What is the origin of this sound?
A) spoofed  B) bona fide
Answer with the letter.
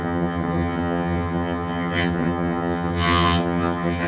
A